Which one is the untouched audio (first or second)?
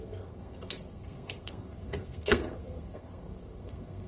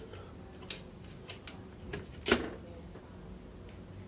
second